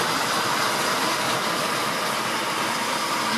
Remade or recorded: recorded